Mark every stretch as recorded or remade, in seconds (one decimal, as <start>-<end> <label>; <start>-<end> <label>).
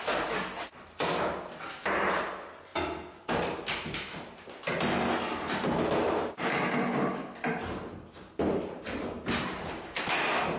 0.0-10.6 recorded